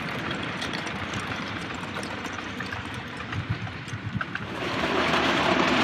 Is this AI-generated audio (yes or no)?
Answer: yes